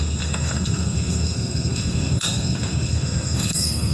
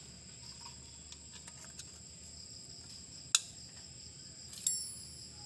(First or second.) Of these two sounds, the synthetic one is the first